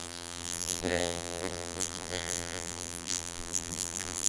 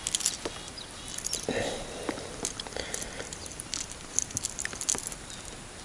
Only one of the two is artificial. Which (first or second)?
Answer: first